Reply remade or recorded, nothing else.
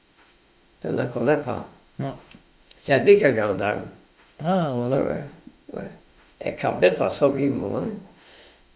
remade